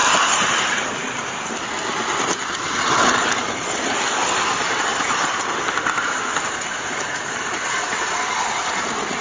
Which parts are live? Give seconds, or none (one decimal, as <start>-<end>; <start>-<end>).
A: 0.0-9.2